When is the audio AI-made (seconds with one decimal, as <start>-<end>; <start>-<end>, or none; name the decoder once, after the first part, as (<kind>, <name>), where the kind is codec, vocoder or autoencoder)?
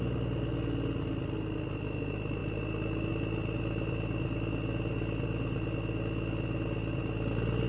none